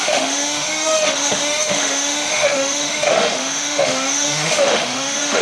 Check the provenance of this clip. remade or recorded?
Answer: remade